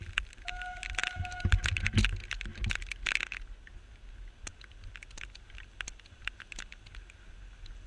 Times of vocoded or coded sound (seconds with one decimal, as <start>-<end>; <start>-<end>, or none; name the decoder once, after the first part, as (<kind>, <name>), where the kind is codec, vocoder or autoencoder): none